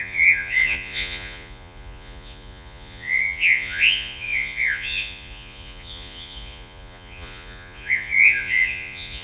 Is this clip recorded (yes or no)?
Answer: no